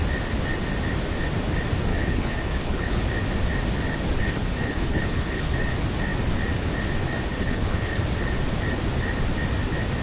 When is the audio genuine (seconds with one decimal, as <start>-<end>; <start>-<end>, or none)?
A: 0.0-1.9; 3.0-4.2; 5.6-7.3; 8.0-10.0